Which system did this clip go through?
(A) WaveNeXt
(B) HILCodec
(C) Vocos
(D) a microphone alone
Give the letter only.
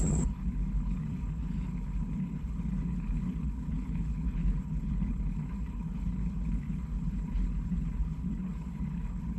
B